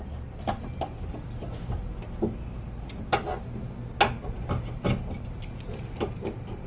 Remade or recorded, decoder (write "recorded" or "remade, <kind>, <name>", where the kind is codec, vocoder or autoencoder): recorded